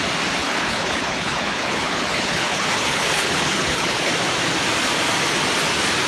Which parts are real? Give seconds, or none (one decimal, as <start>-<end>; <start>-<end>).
0.0-0.4; 4.1-6.1